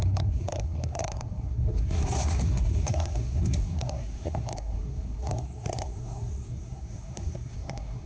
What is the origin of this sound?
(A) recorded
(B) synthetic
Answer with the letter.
B